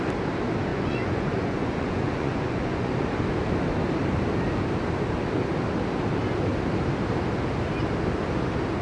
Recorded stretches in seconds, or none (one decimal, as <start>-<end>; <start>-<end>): 0.0-0.7; 2.9-8.8